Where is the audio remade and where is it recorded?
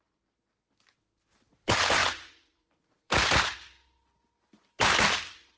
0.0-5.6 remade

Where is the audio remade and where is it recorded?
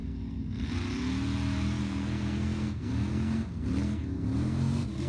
0.0-0.7 remade; 0.7-1.8 recorded; 1.8-5.1 remade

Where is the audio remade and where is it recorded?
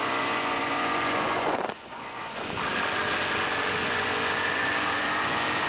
0.0-2.5 remade; 2.5-3.8 recorded; 3.8-5.7 remade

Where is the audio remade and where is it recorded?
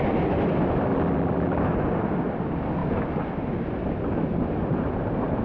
0.0-0.9 recorded; 0.9-1.6 remade; 1.6-5.4 recorded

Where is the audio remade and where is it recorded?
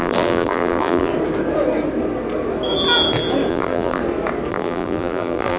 0.0-1.1 remade; 1.1-3.5 recorded; 3.5-4.0 remade; 4.0-4.5 recorded; 4.5-5.6 remade